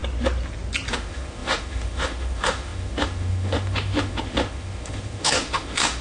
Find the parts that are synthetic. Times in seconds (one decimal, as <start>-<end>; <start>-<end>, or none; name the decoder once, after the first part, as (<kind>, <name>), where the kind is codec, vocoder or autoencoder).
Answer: 0.9-6.0 (autoencoder, DAC-VAE)